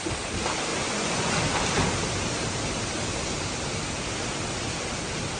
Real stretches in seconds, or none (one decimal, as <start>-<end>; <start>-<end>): 0.0-0.7; 1.3-5.4